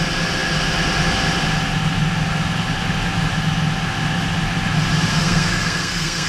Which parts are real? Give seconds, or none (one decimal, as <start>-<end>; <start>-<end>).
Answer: 0.0-5.1